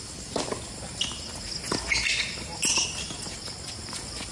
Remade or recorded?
recorded